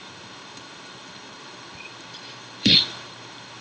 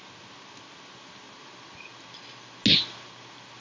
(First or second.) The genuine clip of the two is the second